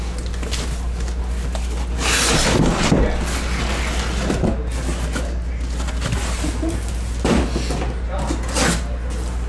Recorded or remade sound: recorded